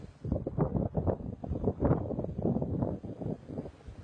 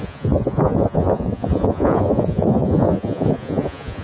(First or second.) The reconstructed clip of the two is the second